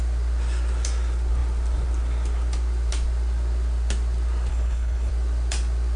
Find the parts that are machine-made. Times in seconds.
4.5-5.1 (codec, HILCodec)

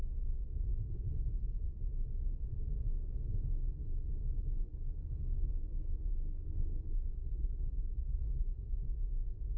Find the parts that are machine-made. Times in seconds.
3.8-8.8 (codec, HILCodec)

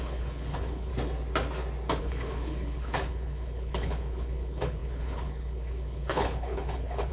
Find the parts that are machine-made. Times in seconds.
0.0-0.9 (codec, HILCodec); 2.0-7.1

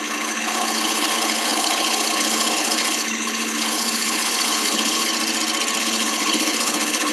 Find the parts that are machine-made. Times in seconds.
0.0-5.1 (codec, HILCodec); 5.8-7.1

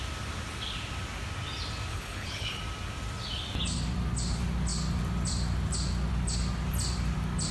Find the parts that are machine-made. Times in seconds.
1.9-2.6 (codec, HILCodec)

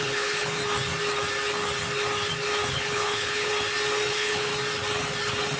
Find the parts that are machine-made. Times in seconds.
0.0-0.6 (codec, HILCodec); 2.7-3.5; 4.1-4.5